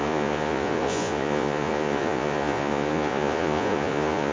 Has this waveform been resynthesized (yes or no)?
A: yes